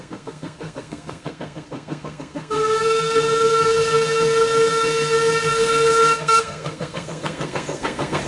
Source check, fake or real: fake